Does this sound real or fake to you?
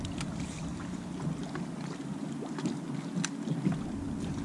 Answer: real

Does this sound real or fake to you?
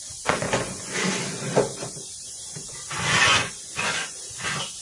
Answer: fake